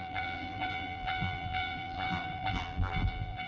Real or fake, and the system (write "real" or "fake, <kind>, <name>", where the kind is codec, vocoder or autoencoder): fake, vocoder, BigVGAN v2